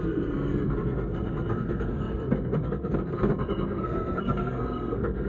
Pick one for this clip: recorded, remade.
remade